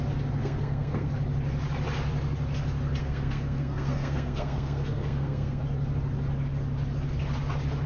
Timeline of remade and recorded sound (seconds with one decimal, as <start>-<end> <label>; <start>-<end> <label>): 0.0-0.4 recorded; 0.4-1.1 remade; 1.1-3.0 recorded; 3.0-5.6 remade; 5.6-7.9 recorded